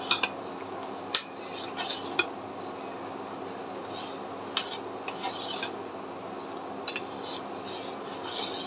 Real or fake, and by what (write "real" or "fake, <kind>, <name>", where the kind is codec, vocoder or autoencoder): real